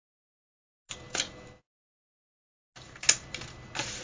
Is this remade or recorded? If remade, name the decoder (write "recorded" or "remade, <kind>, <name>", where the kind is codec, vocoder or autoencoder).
recorded